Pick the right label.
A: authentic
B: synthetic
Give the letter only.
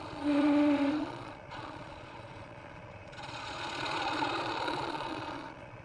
B